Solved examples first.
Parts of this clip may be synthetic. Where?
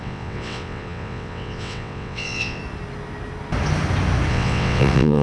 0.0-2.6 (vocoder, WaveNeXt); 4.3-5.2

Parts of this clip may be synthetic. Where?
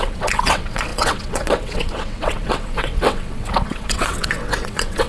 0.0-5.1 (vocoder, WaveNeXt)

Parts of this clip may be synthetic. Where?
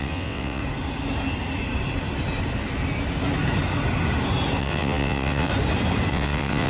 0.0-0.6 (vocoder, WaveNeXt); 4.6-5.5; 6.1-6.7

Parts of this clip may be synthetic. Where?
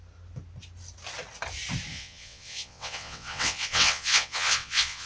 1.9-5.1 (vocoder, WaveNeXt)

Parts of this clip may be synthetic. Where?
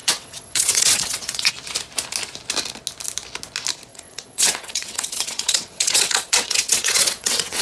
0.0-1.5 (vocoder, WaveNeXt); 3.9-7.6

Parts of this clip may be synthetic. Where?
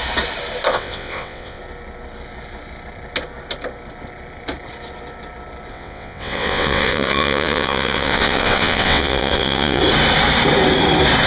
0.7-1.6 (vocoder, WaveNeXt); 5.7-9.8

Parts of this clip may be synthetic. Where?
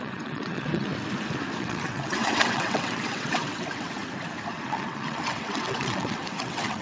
0.0-0.9 (vocoder, WaveNeXt); 1.6-4.0; 4.5-6.8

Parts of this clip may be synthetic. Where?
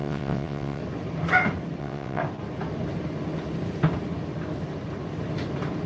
0.0-0.8 (vocoder, WaveNeXt); 1.8-2.2